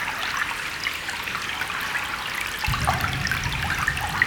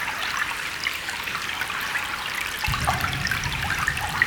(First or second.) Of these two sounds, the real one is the first